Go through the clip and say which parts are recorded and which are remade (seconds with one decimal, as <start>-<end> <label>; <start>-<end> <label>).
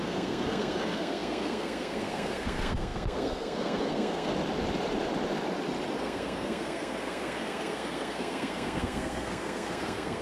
0.0-4.3 remade; 4.3-6.0 recorded; 6.0-10.2 remade